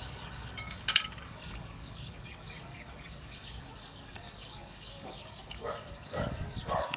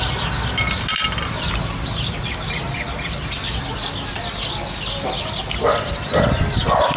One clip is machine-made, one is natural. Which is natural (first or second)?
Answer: second